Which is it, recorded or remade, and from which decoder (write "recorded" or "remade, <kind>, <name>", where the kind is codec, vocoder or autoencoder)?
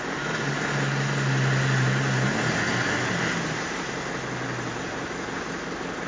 recorded